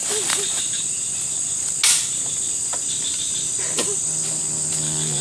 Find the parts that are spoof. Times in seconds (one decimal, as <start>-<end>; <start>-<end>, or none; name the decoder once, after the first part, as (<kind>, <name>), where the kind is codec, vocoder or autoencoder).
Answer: none